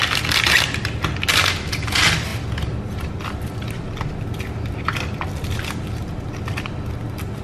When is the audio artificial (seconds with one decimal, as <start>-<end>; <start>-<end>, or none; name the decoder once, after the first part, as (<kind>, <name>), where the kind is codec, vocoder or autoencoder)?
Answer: none

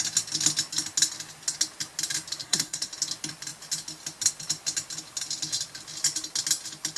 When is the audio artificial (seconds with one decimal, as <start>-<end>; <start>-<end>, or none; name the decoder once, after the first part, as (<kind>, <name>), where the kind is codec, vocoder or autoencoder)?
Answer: 2.4-2.9 (codec, SNAC)

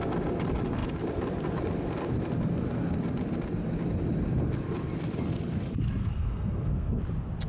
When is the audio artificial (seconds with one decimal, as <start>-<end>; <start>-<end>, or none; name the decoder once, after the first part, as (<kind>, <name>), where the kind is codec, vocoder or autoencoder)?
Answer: 6.0-7.0 (codec, SNAC)

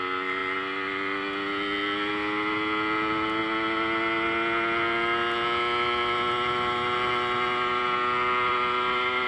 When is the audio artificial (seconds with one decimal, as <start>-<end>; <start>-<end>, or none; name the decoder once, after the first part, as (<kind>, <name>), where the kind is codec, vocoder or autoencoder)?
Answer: none

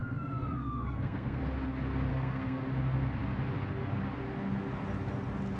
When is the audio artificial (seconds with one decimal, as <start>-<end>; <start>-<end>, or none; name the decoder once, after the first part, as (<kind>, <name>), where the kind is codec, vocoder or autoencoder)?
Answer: 0.0-1.4 (codec, SNAC); 2.1-2.6

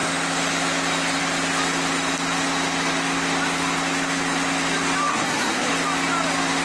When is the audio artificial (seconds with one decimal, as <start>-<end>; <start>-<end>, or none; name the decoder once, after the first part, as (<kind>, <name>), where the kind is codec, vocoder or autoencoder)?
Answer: 5.1-5.7 (codec, SNAC)

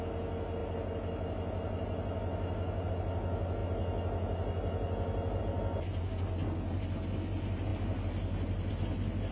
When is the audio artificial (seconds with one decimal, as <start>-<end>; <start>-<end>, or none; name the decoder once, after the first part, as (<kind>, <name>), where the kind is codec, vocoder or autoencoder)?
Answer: none

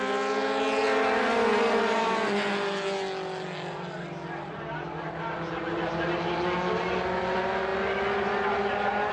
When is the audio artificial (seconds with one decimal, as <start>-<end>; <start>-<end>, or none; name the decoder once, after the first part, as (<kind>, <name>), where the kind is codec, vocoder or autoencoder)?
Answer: none